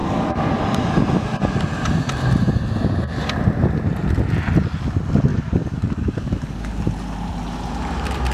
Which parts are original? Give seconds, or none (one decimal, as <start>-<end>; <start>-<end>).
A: 0.6-5.3; 6.7-8.3